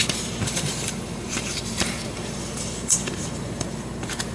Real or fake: fake